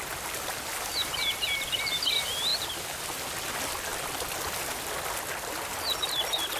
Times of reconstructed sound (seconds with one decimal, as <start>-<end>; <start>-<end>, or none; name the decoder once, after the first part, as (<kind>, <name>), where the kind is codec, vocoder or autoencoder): none